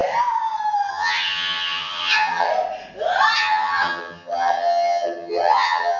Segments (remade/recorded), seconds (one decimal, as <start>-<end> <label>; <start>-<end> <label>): 0.0-0.9 recorded; 0.9-2.5 remade; 2.5-3.4 recorded; 3.4-6.0 remade